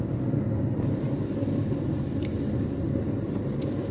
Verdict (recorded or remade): recorded